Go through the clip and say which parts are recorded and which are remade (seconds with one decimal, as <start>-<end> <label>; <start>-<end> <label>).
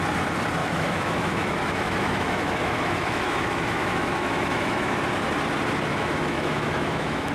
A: 0.0-0.6 recorded; 0.6-5.0 remade; 5.0-5.9 recorded; 5.9-7.3 remade